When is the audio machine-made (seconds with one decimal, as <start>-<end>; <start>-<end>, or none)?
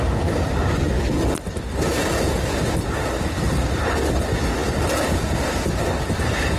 none